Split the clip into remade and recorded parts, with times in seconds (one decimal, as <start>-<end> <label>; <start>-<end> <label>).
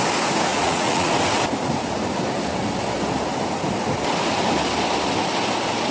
0.0-0.5 recorded; 0.5-1.1 remade; 1.1-5.9 recorded